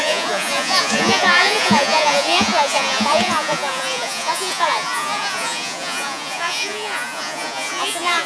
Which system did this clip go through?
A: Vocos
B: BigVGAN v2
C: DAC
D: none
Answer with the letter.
A